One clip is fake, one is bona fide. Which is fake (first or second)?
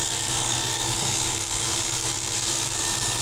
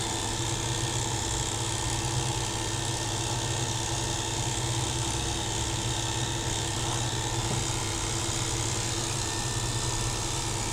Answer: first